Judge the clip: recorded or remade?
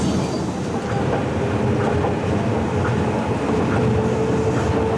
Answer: recorded